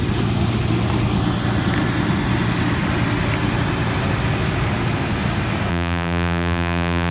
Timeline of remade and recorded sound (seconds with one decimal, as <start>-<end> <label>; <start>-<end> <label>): 0.0-5.7 recorded; 5.7-7.1 remade